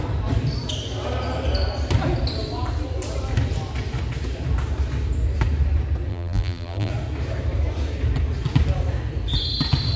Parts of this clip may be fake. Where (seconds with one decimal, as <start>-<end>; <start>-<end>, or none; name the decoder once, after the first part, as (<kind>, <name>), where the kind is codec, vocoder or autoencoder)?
6.1-6.9 (vocoder, BigVGAN v2)